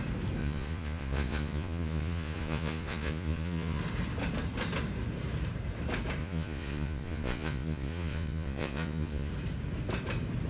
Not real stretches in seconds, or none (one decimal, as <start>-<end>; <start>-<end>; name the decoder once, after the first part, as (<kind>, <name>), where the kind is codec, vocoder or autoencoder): 0.4-3.8 (vocoder, Vocos); 6.2-9.3